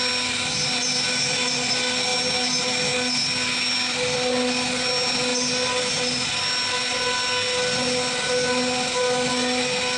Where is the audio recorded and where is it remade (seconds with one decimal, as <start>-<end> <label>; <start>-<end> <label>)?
0.0-10.0 recorded